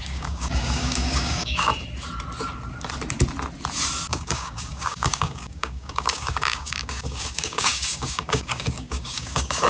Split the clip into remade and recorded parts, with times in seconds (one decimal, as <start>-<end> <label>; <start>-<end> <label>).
0.0-1.7 remade; 1.7-4.1 recorded; 4.1-9.7 remade